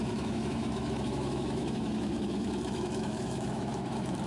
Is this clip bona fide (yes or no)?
no